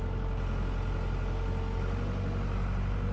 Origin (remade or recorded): recorded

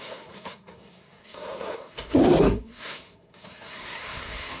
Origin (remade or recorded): remade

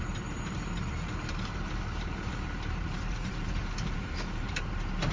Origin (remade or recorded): remade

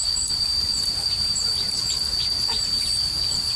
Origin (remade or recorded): remade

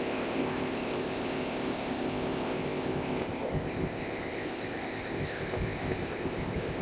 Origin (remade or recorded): remade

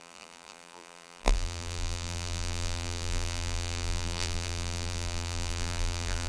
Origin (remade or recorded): remade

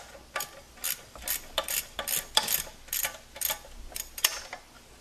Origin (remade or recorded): recorded